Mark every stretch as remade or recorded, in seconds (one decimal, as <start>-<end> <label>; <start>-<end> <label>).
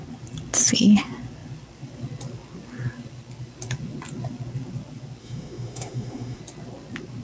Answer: 0.0-5.2 recorded; 5.2-6.4 remade; 6.4-7.2 recorded